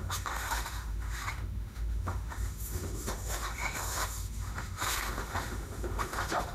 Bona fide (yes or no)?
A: no